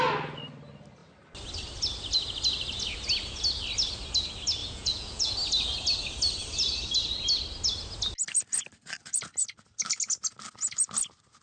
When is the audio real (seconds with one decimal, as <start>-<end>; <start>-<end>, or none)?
0.0-4.6; 5.3-11.4